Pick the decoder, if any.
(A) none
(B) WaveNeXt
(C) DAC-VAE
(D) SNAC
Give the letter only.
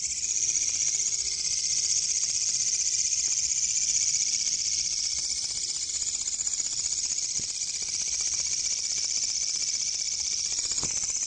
A